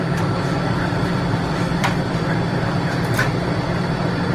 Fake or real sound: fake